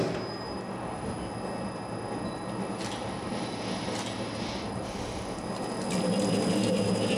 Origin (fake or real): real